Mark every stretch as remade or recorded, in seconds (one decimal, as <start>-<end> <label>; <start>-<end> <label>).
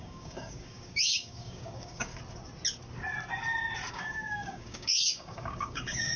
0.0-2.1 remade; 2.1-3.9 recorded; 3.9-6.2 remade